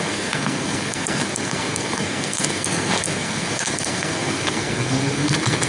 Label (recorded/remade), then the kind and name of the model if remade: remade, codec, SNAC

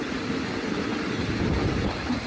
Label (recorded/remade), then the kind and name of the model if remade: recorded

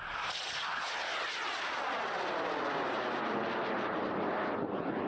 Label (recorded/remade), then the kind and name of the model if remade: recorded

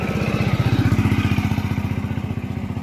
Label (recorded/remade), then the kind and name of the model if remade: recorded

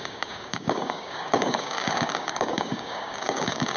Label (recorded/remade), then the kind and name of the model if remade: remade, codec, DAC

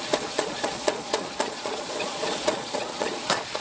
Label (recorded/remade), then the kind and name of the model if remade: remade, vocoder, Vocos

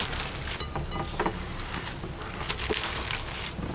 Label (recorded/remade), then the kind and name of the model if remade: recorded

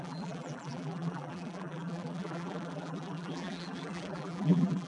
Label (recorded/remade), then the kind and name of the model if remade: remade, vocoder, BigVGAN v2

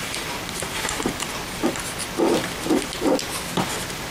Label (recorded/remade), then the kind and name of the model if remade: recorded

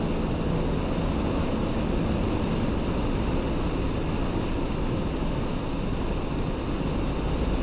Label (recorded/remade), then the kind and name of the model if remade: recorded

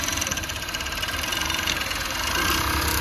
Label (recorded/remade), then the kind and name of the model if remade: remade, vocoder, BigVGAN v2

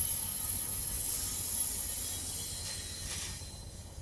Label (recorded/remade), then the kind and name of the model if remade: recorded